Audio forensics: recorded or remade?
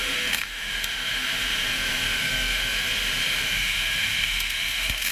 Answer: remade